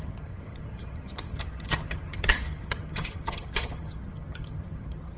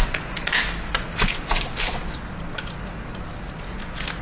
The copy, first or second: first